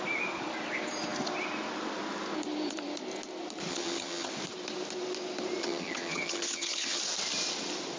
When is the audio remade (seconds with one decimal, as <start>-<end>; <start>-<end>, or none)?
3.7-4.3; 5.6-7.0

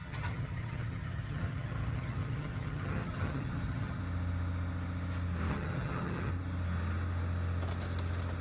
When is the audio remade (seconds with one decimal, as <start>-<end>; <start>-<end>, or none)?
0.0-4.0; 5.5-6.3